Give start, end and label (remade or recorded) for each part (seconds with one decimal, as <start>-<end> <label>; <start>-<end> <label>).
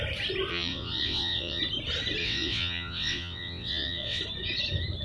0.0-0.5 recorded; 0.5-1.6 remade; 1.6-2.2 recorded; 2.2-4.2 remade; 4.2-5.0 recorded